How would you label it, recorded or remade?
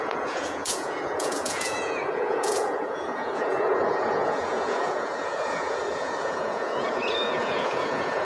remade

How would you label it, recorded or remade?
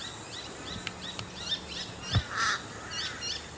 recorded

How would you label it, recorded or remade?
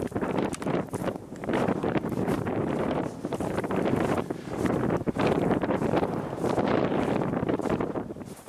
remade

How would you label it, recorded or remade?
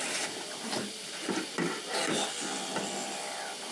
recorded